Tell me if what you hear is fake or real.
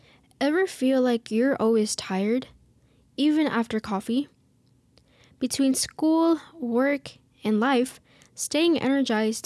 real